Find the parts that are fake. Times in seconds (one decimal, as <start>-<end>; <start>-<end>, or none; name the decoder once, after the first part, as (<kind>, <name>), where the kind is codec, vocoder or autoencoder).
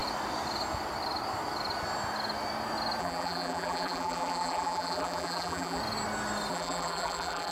3.0-5.8 (vocoder, BigVGAN v2); 6.5-7.5